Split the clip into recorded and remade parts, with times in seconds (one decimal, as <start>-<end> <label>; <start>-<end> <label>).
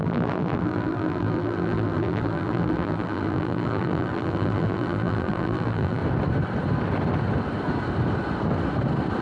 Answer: 0.0-6.0 remade; 6.0-9.2 recorded